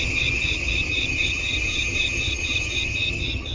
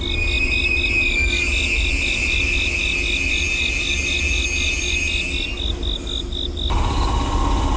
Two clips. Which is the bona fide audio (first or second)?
second